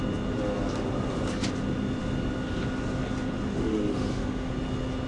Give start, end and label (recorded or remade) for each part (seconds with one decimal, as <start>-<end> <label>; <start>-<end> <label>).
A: 0.0-3.5 recorded; 3.5-4.5 remade; 4.5-5.1 recorded